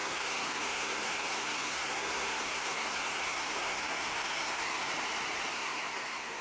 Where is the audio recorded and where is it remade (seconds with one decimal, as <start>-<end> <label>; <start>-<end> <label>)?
0.0-4.9 remade; 4.9-5.5 recorded; 5.5-6.4 remade